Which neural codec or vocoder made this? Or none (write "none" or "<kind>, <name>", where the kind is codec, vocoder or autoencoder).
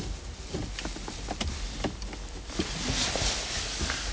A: none